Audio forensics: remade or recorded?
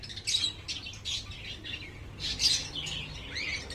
recorded